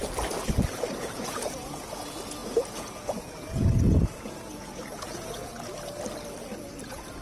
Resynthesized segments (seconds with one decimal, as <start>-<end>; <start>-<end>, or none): 0.9-5.5; 6.8-7.2